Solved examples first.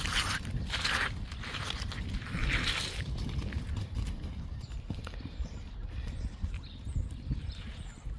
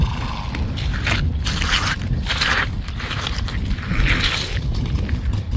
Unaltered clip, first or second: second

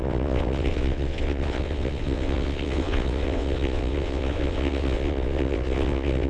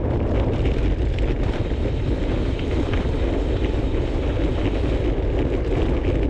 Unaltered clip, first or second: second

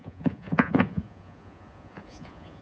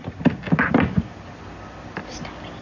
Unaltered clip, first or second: second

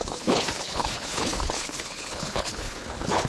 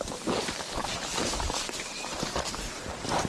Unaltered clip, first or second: second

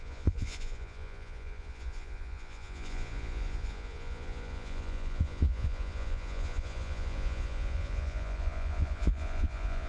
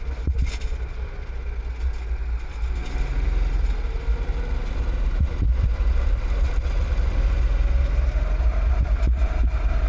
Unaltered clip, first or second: second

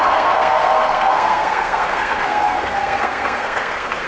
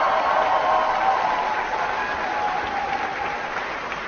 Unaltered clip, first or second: second